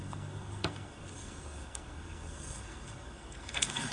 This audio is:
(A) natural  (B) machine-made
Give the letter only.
B